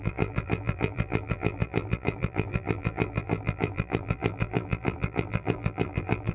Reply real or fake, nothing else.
fake